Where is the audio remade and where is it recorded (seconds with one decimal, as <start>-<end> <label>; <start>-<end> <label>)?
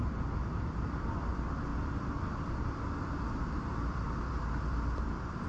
0.0-5.5 remade